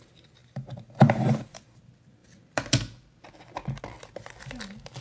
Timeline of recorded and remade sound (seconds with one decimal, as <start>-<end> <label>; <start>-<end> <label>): 0.0-0.4 recorded; 0.4-1.8 remade; 1.8-5.0 recorded